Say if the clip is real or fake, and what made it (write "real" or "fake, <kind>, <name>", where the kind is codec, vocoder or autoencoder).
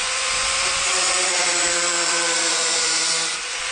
fake, vocoder, Vocos